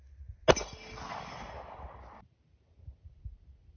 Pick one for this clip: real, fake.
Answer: real